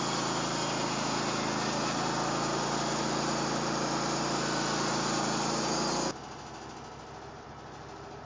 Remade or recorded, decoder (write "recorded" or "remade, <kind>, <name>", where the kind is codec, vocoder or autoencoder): recorded